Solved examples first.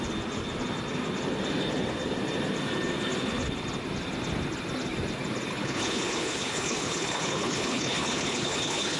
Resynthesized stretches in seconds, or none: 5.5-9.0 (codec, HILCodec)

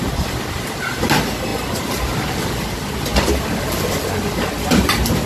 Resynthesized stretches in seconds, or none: none